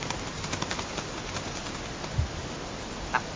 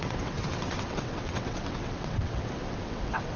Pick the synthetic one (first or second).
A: second